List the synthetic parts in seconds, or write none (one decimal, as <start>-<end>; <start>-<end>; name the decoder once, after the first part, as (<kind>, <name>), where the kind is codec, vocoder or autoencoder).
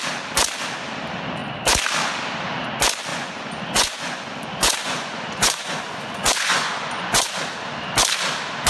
3.1-7.3 (vocoder, Vocos)